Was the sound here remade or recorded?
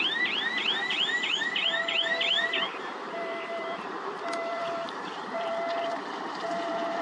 remade